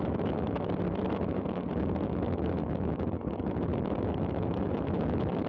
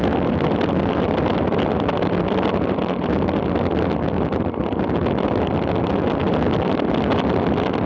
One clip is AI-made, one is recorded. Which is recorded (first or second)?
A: second